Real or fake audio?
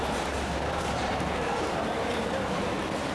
fake